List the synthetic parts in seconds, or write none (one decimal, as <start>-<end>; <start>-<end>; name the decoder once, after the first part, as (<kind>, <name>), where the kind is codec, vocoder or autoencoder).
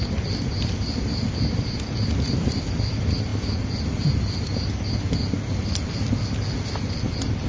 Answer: none